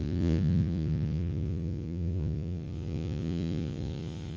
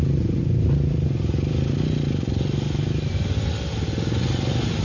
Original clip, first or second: second